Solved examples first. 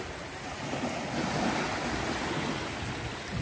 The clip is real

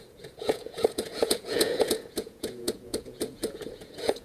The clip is fake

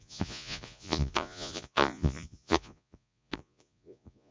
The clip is fake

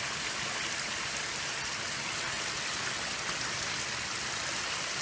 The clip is real